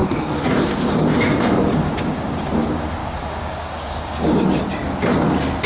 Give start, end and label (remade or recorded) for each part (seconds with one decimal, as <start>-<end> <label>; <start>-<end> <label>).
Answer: 0.0-1.7 recorded; 1.7-2.5 remade; 2.5-3.0 recorded; 3.0-4.6 remade; 4.6-5.7 recorded